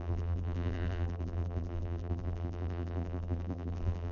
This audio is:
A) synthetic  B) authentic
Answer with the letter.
A